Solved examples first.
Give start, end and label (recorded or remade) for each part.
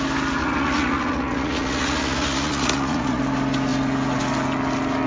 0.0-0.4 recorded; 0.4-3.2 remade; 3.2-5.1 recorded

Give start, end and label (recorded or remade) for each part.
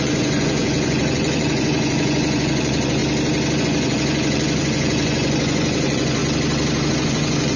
0.0-3.0 remade; 3.0-3.6 recorded; 3.6-6.2 remade; 6.2-6.9 recorded; 6.9-7.6 remade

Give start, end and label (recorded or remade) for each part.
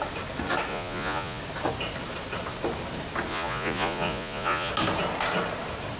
0.0-0.7 recorded; 0.7-1.4 remade; 1.4-3.3 recorded; 3.3-4.7 remade; 4.7-6.0 recorded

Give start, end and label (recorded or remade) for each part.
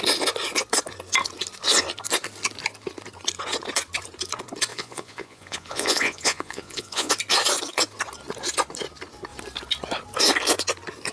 0.0-4.7 recorded; 4.7-7.1 remade; 7.1-11.1 recorded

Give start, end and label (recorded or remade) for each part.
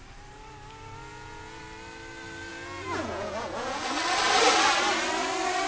0.0-1.1 recorded; 1.1-1.6 remade; 1.6-2.5 recorded; 2.5-3.8 remade; 3.8-5.7 recorded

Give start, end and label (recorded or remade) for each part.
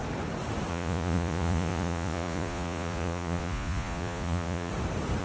0.0-0.7 recorded; 0.7-4.7 remade; 4.7-5.2 recorded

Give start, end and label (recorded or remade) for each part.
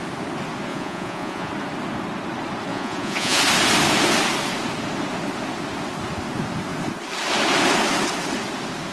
0.0-0.7 recorded; 0.7-1.5 remade; 1.5-2.7 recorded; 2.7-3.4 remade; 3.4-8.9 recorded